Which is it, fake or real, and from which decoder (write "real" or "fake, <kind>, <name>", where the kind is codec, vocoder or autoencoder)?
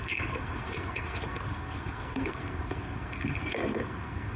fake, codec, SNAC